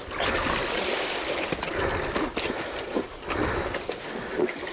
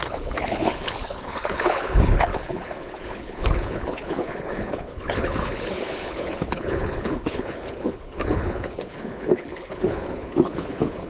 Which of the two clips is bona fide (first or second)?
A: first